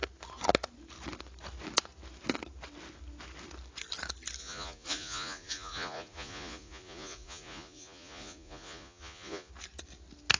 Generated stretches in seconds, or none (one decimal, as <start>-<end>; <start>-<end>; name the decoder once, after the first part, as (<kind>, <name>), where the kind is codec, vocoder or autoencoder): 4.4-9.5 (vocoder, Vocos)